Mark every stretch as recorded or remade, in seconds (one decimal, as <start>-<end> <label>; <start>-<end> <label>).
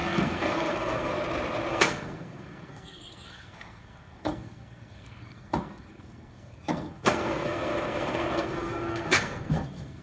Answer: 0.0-1.1 remade; 1.1-1.7 recorded; 1.7-10.0 remade